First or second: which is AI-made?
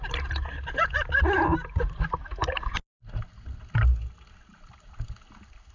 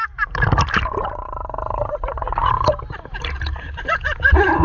second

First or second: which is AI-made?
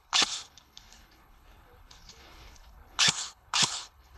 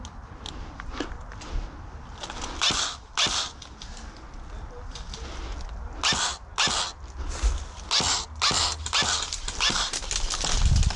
first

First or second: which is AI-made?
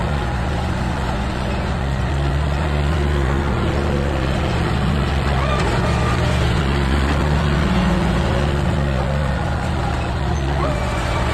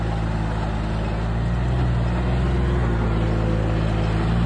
first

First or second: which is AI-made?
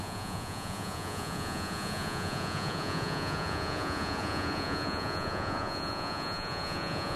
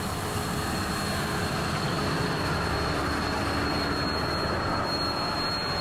first